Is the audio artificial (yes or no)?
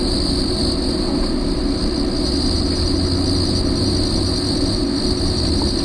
no